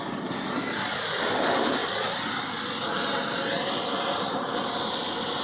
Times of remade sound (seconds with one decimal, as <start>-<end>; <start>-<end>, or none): none